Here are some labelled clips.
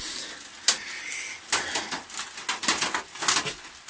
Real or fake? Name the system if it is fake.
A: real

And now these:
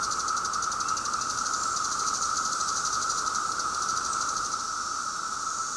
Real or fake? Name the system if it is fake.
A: real